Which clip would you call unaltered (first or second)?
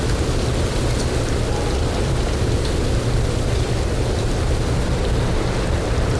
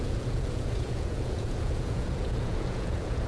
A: first